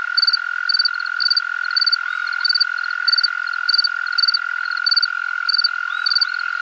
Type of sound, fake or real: real